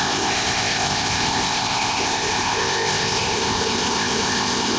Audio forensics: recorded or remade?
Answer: remade